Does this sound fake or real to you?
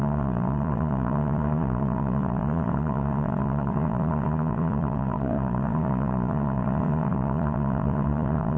fake